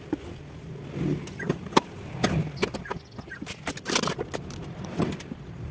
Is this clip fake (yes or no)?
no